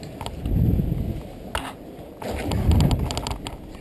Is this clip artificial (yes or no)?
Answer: no